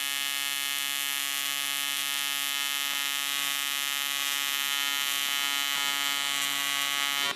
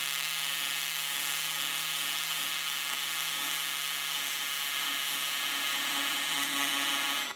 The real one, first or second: first